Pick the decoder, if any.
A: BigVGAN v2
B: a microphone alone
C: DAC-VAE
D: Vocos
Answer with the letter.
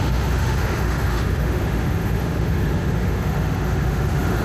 C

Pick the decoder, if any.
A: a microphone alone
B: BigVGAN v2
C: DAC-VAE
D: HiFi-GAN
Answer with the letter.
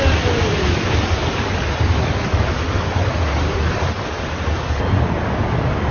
A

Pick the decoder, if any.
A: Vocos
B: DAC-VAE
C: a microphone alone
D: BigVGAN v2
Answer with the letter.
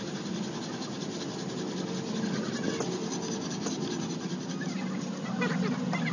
C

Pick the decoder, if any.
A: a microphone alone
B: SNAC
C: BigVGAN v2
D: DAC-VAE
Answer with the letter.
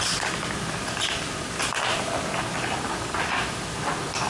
A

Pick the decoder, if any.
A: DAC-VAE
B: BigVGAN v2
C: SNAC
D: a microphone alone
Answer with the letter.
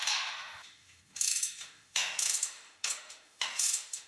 A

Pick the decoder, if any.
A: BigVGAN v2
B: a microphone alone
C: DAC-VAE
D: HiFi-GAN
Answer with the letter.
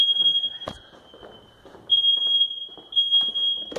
B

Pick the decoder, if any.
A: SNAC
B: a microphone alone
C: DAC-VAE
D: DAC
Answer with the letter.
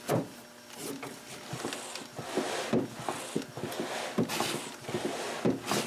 B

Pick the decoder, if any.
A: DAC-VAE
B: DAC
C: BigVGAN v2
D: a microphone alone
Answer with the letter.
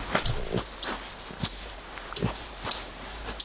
D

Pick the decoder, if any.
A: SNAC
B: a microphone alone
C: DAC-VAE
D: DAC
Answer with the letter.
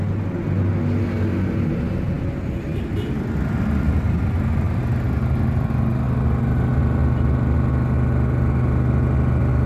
B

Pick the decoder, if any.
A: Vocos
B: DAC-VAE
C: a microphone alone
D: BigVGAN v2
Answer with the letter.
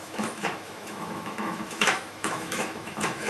B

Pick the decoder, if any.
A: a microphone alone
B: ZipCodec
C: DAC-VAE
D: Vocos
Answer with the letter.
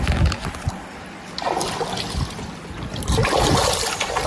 A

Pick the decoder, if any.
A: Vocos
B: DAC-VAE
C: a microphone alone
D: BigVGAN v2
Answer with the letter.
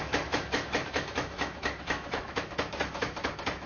B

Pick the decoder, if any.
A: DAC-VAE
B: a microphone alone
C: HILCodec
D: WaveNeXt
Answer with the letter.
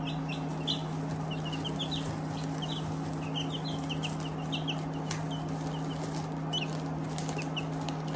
B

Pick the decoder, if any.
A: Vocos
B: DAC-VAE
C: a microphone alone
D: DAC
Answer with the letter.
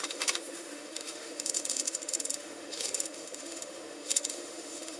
B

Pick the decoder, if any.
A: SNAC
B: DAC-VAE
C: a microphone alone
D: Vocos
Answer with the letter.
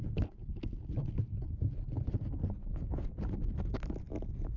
C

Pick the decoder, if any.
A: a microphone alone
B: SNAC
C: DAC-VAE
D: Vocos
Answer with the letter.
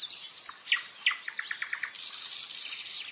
A